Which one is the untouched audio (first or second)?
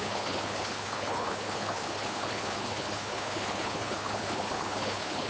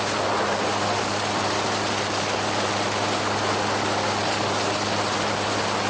second